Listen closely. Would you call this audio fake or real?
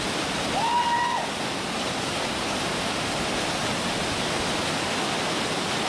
real